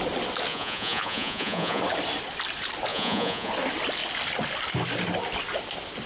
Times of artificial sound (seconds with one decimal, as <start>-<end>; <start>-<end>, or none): 0.5-1.8; 2.9-3.5